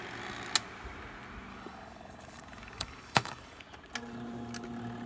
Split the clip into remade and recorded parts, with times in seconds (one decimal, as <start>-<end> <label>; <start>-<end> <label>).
0.0-1.5 recorded; 1.5-3.6 remade; 3.6-5.1 recorded